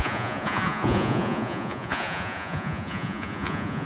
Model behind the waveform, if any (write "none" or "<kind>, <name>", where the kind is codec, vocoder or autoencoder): vocoder, Vocos